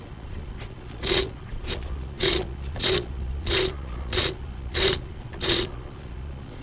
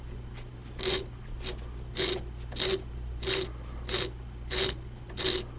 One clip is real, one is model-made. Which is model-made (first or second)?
first